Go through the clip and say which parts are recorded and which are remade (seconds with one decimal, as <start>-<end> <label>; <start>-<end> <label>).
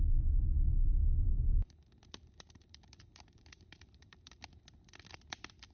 0.0-1.0 recorded; 1.0-4.4 remade; 4.4-5.7 recorded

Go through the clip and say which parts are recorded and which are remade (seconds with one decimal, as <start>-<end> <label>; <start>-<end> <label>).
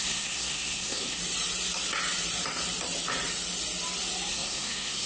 0.0-1.2 remade; 1.2-4.3 recorded; 4.3-5.1 remade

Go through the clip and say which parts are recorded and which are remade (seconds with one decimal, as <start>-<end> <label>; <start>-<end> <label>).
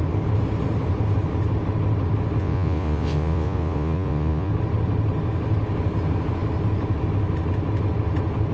0.0-2.4 recorded; 2.4-4.5 remade; 4.5-8.5 recorded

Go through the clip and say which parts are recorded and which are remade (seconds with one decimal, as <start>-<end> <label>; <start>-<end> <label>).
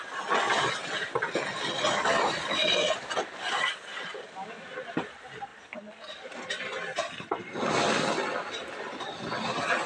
0.0-9.9 recorded